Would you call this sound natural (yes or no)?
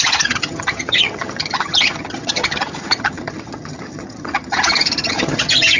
no